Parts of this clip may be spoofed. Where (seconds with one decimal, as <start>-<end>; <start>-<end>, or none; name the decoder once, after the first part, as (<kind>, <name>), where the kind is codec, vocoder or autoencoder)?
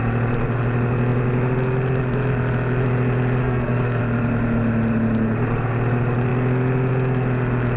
3.4-4.0 (codec, SNAC)